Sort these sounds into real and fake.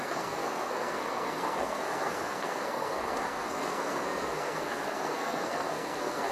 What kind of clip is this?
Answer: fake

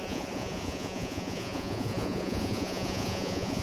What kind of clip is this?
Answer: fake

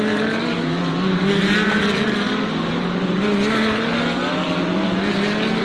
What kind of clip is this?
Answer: real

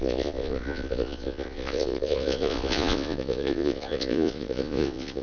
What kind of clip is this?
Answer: fake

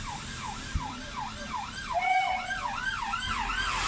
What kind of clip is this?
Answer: fake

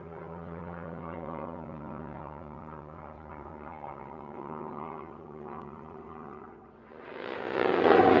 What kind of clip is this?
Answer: fake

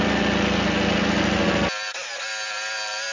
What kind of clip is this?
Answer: real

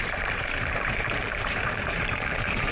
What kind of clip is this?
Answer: fake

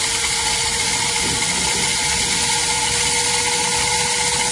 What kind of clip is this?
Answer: real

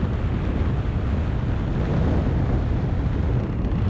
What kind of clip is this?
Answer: real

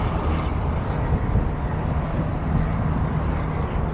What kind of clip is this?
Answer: real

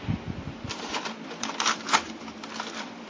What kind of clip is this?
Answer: fake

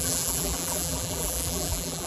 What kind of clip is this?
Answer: fake